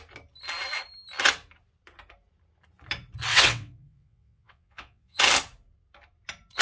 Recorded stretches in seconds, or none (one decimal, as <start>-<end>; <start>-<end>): 0.0-3.3; 5.2-6.6